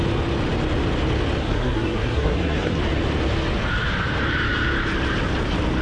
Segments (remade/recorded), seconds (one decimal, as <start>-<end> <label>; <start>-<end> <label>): 0.0-1.4 recorded; 1.4-2.8 remade; 2.8-5.8 recorded

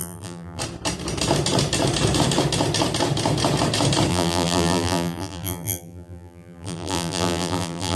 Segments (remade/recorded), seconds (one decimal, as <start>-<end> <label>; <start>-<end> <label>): 0.0-0.6 remade; 0.6-4.1 recorded; 4.1-8.0 remade